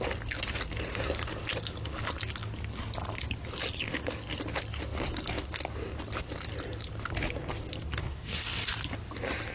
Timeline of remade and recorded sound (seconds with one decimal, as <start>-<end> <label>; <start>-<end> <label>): 0.0-8.0 recorded; 8.0-8.7 remade; 8.7-9.5 recorded

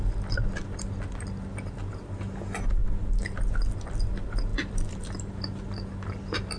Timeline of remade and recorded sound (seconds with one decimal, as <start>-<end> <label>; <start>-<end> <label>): 0.0-4.5 recorded; 4.5-5.3 remade; 5.3-6.6 recorded

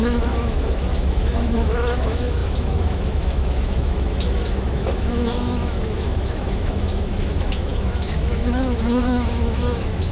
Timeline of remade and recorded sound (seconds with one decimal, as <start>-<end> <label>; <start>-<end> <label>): 0.0-10.1 remade

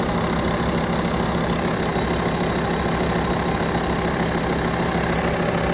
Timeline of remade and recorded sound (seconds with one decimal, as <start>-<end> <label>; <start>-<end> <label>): 0.0-5.7 recorded

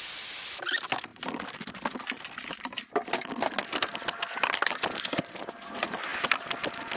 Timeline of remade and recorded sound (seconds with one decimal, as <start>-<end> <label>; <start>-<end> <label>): 0.0-7.0 recorded